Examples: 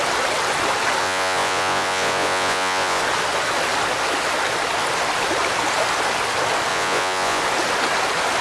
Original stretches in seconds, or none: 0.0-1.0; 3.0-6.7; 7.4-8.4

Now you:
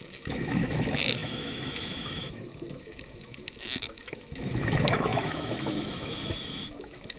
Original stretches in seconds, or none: none

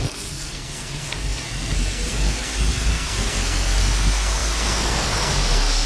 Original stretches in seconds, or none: none

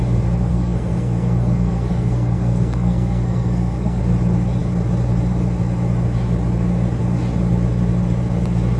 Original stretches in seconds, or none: 0.0-0.5; 4.0-8.8

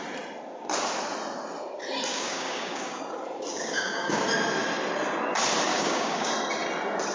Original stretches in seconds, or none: 0.0-2.1; 3.0-3.5; 4.2-5.7; 6.3-7.1

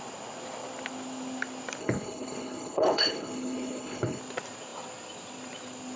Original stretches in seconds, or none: 0.0-1.8; 4.2-6.0

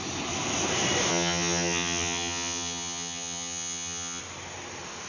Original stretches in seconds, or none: 0.0-1.1; 4.2-5.1